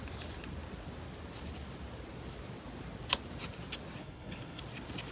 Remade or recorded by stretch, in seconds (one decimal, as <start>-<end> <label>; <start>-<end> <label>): 0.0-4.0 recorded; 4.0-4.6 remade; 4.6-5.1 recorded